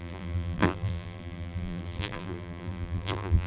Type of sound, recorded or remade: remade